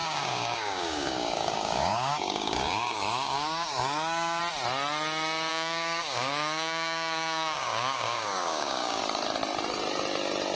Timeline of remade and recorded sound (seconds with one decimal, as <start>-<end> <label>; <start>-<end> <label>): 0.0-4.4 remade; 4.4-5.5 recorded; 5.5-9.0 remade; 9.0-10.6 recorded